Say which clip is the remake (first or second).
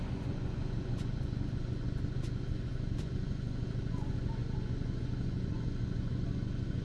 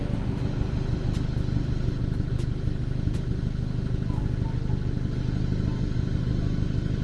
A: first